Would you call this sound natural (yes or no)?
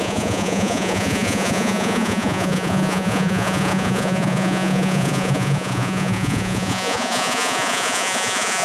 no